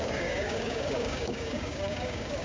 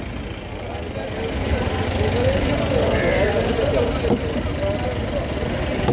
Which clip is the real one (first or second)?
second